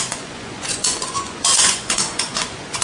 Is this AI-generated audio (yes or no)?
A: yes